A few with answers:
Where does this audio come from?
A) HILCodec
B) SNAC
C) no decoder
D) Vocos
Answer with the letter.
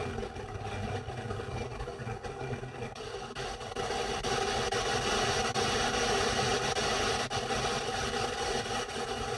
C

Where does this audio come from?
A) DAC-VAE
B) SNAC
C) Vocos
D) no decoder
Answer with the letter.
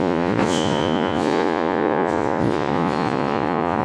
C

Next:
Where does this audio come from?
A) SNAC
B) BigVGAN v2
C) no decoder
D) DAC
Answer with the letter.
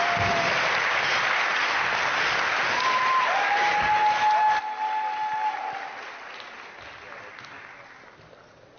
C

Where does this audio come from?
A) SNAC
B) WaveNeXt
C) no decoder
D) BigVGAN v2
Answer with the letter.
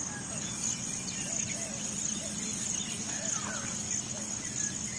C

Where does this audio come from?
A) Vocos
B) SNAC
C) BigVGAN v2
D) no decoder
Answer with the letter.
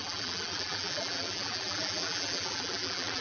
C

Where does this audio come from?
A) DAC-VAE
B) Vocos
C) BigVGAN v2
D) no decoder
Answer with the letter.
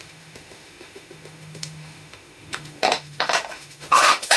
A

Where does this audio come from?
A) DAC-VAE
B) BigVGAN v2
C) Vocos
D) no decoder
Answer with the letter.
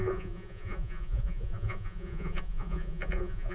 C